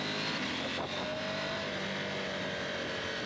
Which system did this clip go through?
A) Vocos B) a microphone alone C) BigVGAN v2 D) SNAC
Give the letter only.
B